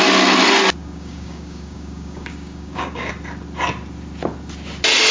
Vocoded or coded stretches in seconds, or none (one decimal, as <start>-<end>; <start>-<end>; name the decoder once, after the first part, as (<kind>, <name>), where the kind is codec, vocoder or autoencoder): 0.8-3.1 (codec, DAC)